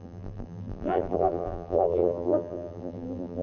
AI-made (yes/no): yes